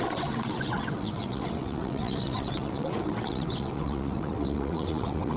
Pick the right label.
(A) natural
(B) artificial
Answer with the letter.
B